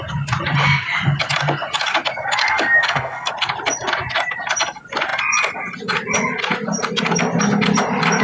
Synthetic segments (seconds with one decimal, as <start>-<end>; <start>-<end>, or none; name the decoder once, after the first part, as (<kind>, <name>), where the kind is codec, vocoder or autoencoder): 2.4-3.3 (codec, SNAC)